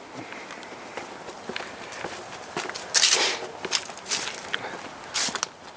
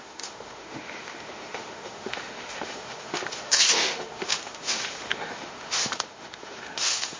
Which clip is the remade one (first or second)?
second